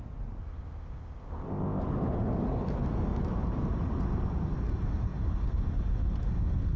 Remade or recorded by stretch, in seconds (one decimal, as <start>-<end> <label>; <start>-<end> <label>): 0.0-0.4 recorded; 0.4-1.8 remade; 1.8-6.8 recorded